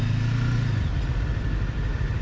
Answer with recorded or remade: recorded